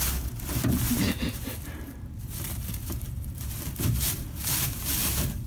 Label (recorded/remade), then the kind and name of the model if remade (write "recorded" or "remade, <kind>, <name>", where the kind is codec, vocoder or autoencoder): remade, vocoder, BigVGAN v2